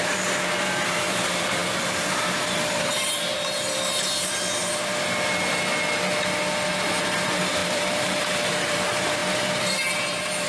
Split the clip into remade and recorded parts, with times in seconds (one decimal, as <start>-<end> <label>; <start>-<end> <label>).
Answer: 0.0-4.9 remade; 4.9-6.7 recorded; 6.7-10.5 remade